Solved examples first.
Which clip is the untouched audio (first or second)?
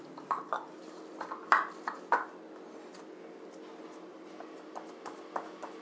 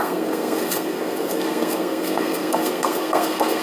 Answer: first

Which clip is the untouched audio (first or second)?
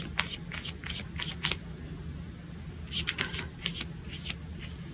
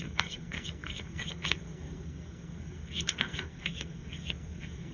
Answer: first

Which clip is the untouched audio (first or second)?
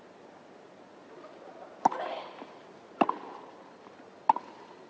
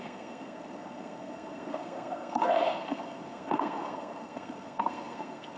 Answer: first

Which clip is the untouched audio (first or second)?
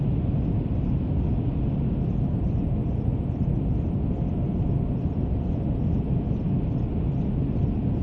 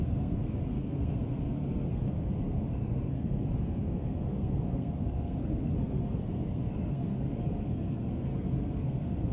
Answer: first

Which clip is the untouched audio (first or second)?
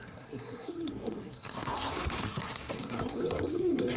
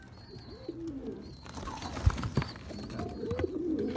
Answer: second